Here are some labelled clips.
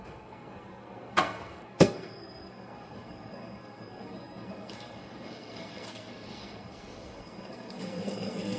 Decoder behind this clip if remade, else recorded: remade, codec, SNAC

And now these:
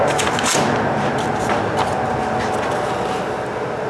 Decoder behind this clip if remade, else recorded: recorded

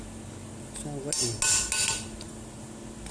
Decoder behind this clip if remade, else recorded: recorded